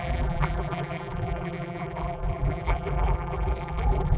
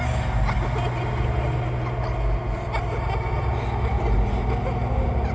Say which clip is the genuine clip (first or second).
second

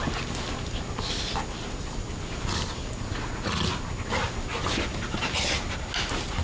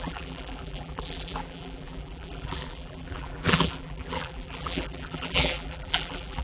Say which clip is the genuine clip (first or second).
first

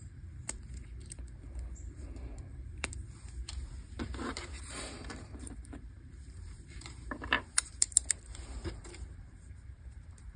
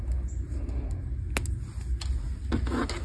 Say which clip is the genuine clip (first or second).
second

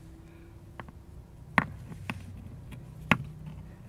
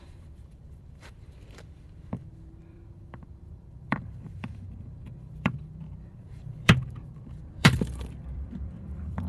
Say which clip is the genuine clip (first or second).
first